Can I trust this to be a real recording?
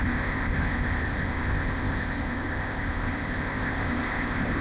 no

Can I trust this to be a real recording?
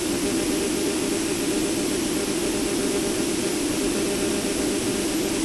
yes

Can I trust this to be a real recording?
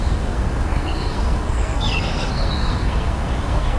no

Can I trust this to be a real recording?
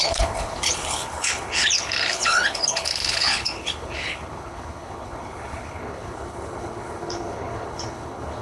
no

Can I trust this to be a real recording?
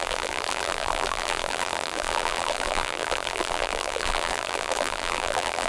no